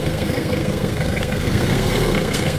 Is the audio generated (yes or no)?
yes